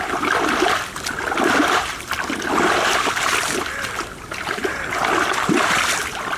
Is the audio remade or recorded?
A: recorded